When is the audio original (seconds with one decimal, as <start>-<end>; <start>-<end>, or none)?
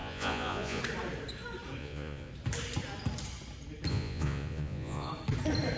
0.8-1.8; 2.3-3.9; 5.1-5.8